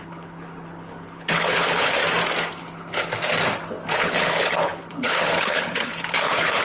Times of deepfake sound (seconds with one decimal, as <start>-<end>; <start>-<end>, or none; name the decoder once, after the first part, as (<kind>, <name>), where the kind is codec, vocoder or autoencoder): 0.0-2.0 (codec, HILCodec); 2.6-3.1; 3.9-6.6